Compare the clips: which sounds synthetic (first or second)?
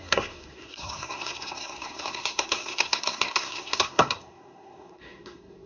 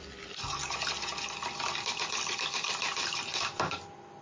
first